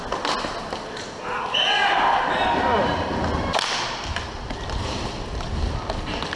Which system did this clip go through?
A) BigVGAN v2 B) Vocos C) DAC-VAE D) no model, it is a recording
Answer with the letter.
D